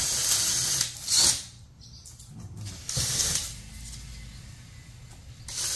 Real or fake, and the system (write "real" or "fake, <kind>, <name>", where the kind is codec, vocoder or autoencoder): real